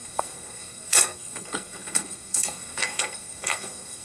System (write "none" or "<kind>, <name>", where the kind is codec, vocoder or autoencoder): codec, SNAC